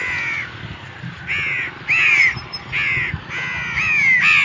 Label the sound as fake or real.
real